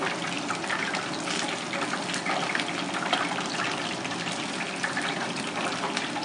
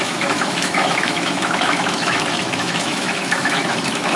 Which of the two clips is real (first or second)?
first